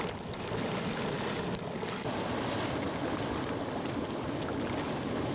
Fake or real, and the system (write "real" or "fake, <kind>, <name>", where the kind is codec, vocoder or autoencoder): real